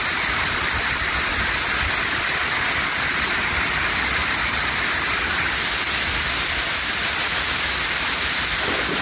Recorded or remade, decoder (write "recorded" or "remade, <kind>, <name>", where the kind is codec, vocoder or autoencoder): recorded